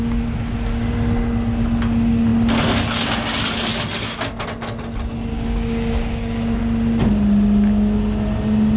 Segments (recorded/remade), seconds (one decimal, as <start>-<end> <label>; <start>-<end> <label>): 0.0-5.3 recorded; 5.3-6.6 remade; 6.6-8.8 recorded